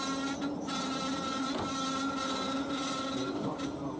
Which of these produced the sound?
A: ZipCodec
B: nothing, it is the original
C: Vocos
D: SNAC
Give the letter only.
B